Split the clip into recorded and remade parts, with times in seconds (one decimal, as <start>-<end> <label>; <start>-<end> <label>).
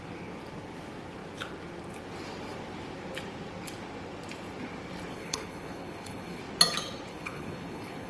0.0-5.1 recorded; 5.1-6.4 remade; 6.4-7.1 recorded; 7.1-8.1 remade